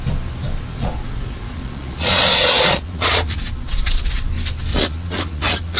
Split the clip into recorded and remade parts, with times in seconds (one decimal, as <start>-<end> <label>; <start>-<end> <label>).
0.0-0.7 recorded; 0.7-4.2 remade; 4.2-4.7 recorded; 4.7-5.8 remade